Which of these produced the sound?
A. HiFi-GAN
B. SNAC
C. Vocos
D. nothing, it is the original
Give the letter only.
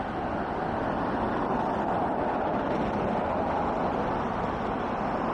D